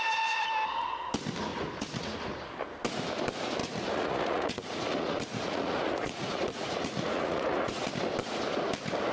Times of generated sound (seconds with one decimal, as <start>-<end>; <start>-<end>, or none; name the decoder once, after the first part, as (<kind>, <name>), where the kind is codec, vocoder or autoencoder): 1.5-2.5 (vocoder, Vocos); 3.6-7.9

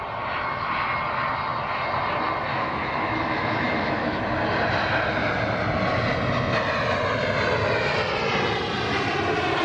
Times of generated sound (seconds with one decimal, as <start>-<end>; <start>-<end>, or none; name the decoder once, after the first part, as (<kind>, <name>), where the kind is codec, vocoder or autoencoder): 2.5-4.2 (autoencoder, DAC-VAE)

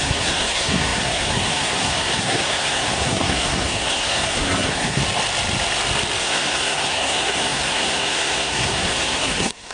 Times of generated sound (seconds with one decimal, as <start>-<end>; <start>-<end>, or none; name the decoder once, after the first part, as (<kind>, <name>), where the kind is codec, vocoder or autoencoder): 0.0-5.0 (codec, SNAC); 6.2-9.7

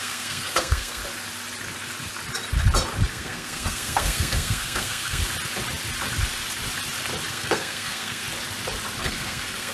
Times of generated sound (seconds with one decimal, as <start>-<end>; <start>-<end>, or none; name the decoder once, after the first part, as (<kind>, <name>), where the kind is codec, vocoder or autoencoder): 0.0-1.0 (codec, SNAC); 3.1-5.2; 7.3-8.2; 9.0-9.7

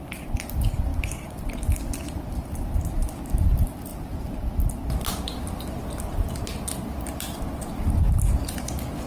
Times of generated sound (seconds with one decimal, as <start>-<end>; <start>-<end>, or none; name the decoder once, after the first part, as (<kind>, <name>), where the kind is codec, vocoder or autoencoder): 0.9-2.7 (vocoder, BigVGAN v2)

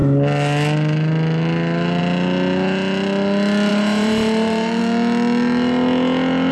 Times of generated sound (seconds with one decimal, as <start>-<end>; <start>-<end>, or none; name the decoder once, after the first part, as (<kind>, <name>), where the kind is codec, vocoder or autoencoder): 3.7-4.8 (vocoder, BigVGAN v2)